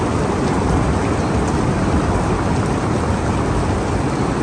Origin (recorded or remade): recorded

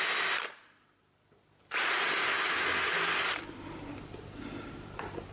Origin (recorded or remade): recorded